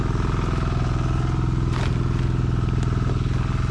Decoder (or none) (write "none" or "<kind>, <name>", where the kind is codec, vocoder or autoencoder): none